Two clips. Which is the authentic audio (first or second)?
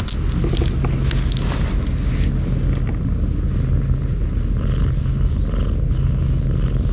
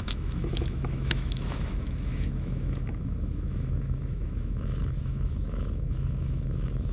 first